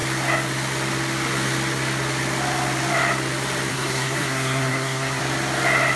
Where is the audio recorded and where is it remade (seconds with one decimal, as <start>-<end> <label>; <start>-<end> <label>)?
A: 0.0-3.7 recorded; 3.7-5.2 remade; 5.2-6.0 recorded